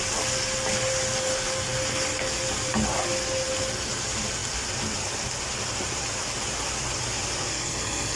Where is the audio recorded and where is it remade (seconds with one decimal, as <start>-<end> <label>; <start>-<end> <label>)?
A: 0.0-7.5 recorded; 7.5-8.2 remade